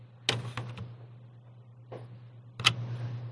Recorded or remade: recorded